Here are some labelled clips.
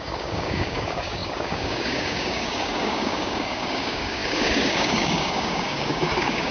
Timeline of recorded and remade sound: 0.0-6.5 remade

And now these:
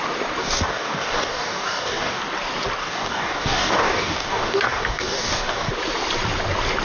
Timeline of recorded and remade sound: 0.0-0.4 recorded; 0.4-2.2 remade; 2.2-2.8 recorded; 2.8-5.7 remade; 5.7-6.8 recorded

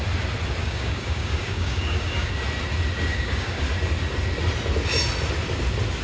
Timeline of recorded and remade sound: 0.0-0.6 recorded; 0.6-2.3 remade; 2.3-3.1 recorded; 3.1-3.6 remade; 3.6-6.0 recorded

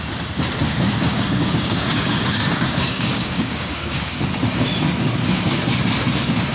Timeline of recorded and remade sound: 0.0-0.7 recorded; 0.7-4.2 remade; 4.2-6.5 recorded

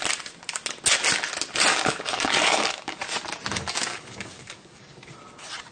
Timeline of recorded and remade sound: 0.0-1.7 recorded; 1.7-3.0 remade; 3.0-3.5 recorded; 3.5-5.1 remade; 5.1-5.7 recorded